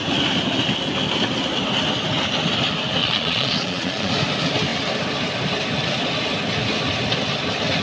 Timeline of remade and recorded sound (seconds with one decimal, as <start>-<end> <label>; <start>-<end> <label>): 0.0-3.0 recorded; 3.0-4.1 remade; 4.1-7.8 recorded